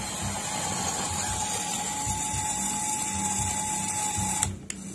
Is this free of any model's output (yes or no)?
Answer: yes